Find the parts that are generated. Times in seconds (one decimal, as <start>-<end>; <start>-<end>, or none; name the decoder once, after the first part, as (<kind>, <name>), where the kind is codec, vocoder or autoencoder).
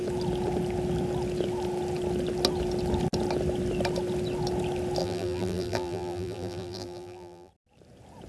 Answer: 5.0-7.5 (vocoder, BigVGAN v2)